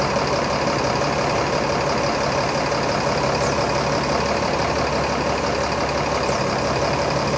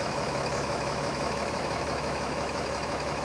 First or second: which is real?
first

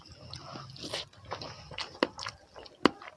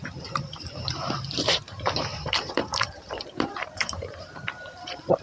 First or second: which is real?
first